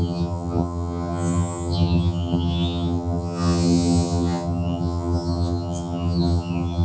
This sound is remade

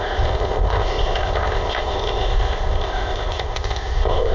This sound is remade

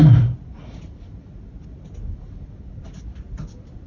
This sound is recorded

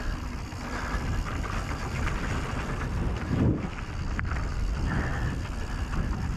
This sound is recorded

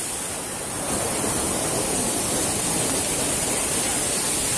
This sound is recorded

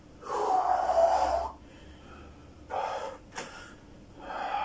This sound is recorded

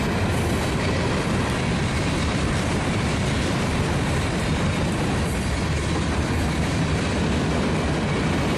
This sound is remade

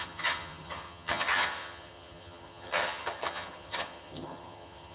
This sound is remade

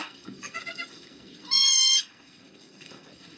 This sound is remade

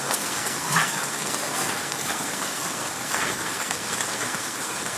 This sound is remade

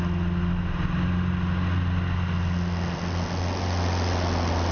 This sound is recorded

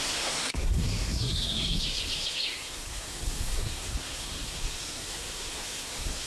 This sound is remade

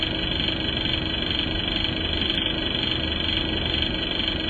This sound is recorded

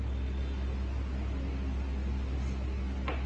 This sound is recorded